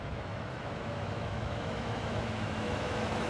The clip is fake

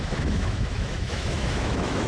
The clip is fake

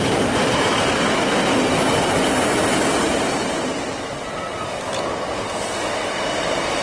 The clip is real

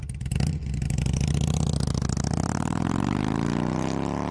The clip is real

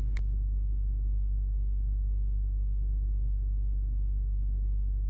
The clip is fake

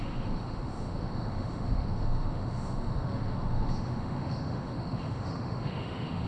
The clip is fake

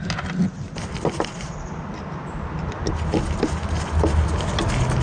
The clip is real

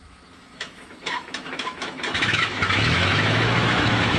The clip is fake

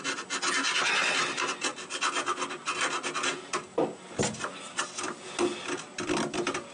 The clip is real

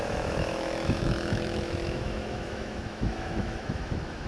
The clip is fake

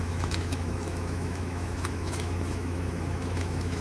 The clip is fake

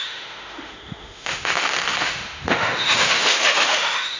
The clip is fake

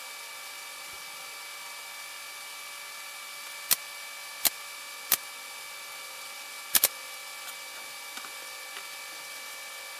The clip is real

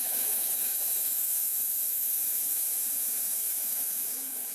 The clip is fake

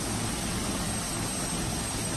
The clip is real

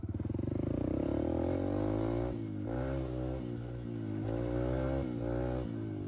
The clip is real